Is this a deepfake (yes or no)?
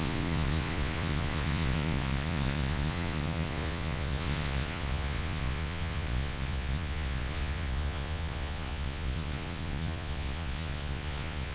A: yes